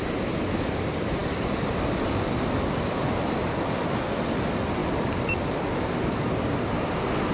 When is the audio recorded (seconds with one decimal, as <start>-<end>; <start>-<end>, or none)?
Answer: 0.0-7.3